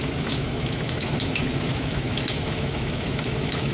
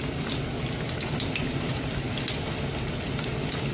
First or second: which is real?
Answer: second